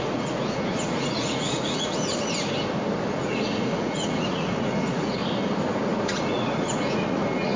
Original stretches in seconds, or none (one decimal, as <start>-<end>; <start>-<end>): 2.1-3.2; 5.2-5.8